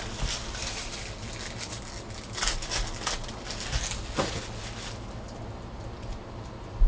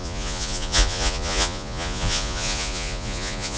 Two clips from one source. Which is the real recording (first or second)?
first